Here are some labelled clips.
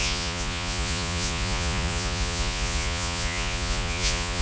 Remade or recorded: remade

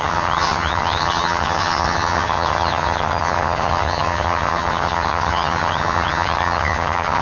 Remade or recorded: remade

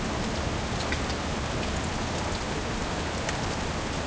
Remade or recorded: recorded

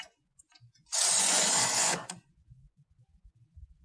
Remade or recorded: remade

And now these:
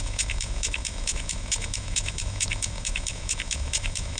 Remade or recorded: remade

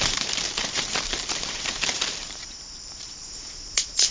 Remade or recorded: remade